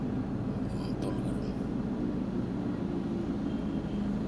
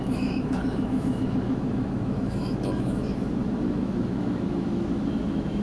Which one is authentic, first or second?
first